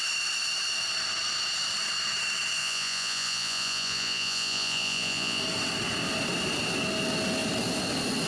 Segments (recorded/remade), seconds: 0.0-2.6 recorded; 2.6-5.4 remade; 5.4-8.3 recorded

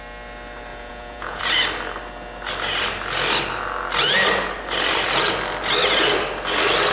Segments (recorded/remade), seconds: 0.0-0.7 recorded; 0.7-1.4 remade; 1.4-6.9 recorded